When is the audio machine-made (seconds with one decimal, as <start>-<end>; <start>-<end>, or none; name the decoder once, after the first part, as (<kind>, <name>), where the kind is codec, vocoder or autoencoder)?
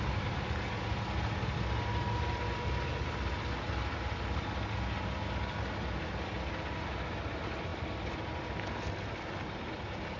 none